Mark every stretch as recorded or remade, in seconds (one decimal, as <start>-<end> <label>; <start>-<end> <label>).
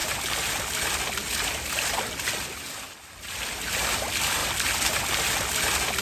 0.0-6.0 recorded